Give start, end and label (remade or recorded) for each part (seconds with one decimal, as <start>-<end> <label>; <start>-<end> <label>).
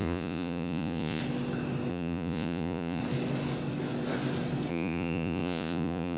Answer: 0.0-1.2 remade; 1.2-1.9 recorded; 1.9-3.0 remade; 3.0-4.7 recorded; 4.7-6.2 remade